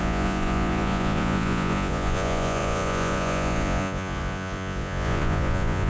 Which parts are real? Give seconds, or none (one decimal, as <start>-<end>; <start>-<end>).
none